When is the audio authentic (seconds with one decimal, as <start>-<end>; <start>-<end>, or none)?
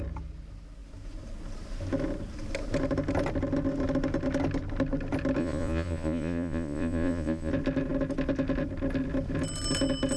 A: 0.0-5.4; 7.5-10.2